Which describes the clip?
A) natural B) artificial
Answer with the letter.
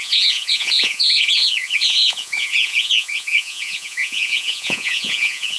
B